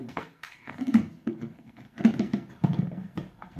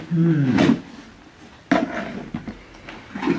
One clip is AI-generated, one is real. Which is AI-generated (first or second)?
first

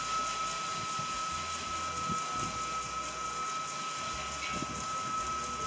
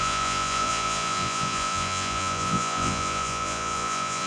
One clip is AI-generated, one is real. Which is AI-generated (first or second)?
second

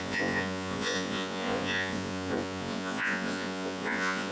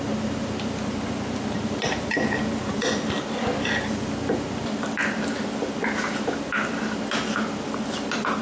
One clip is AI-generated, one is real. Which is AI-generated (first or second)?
first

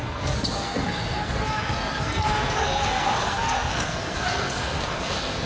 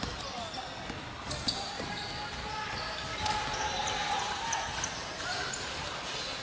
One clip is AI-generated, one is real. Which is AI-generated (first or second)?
first